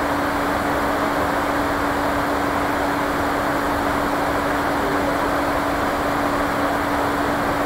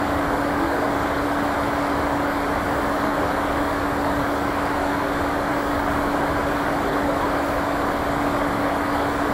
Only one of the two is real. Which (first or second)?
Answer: first